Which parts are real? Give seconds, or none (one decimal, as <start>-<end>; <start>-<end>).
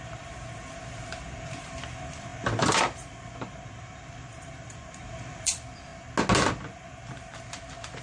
5.9-7.2